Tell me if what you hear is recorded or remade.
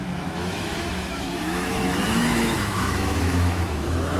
remade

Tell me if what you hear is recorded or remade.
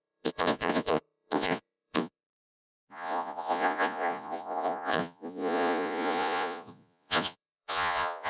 remade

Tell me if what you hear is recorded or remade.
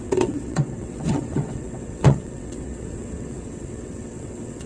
remade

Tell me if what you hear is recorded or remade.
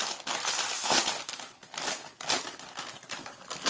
recorded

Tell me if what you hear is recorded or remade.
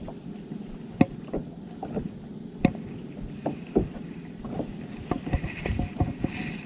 recorded